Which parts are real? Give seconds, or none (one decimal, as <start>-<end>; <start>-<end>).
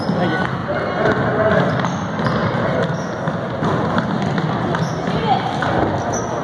0.0-6.4